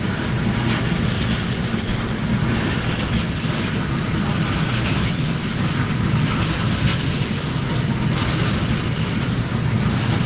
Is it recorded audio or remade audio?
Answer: recorded